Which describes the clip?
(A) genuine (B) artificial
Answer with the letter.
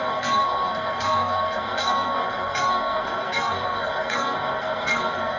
B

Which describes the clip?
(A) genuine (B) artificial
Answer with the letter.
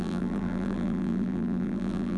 B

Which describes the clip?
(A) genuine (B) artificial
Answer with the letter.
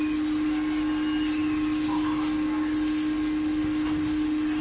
A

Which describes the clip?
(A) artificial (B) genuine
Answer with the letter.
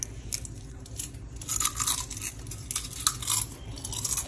B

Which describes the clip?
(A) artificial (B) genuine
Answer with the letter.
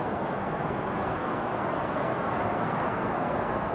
A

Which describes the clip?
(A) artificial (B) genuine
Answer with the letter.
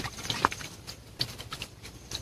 B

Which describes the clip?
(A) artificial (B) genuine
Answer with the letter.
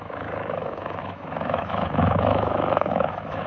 A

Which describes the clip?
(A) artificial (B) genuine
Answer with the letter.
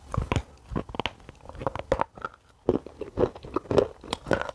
B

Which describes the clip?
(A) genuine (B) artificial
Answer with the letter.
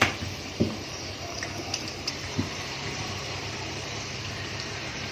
B